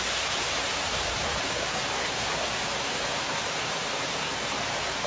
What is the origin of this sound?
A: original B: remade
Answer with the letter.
A